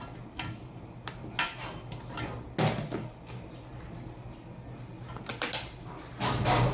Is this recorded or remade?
recorded